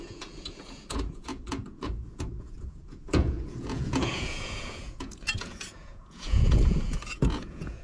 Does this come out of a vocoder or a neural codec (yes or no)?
yes